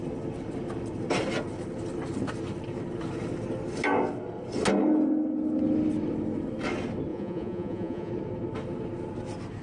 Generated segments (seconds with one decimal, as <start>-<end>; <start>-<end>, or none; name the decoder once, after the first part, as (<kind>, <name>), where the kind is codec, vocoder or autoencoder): 7.1-8.1 (vocoder, Vocos)